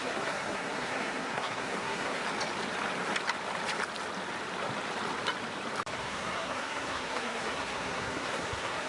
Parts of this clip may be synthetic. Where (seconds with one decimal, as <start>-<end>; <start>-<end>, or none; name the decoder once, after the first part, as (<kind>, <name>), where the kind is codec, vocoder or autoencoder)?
0.0-2.2 (codec, SNAC); 6.0-8.9